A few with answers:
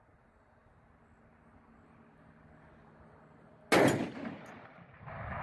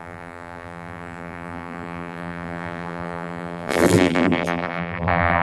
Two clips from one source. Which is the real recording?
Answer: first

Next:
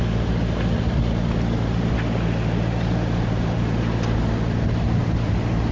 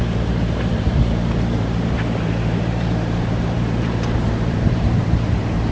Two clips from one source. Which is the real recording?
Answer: first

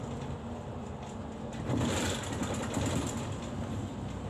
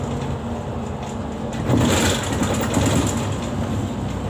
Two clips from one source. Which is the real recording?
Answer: second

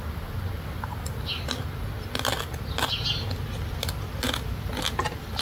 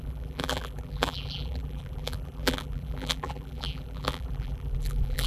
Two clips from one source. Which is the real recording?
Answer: first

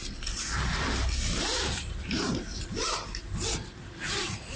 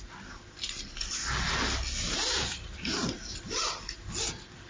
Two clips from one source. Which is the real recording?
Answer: second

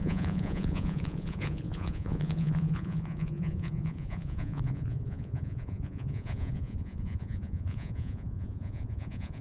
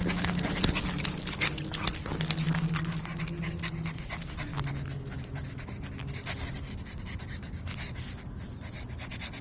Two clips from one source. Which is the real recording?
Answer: second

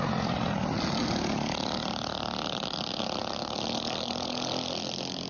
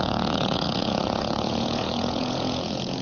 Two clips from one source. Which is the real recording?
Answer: first